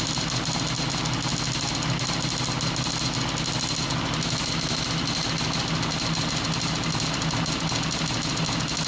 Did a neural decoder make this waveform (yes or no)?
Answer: no